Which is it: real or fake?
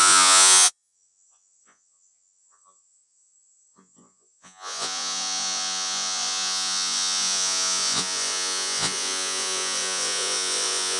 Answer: fake